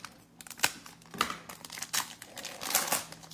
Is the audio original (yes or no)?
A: yes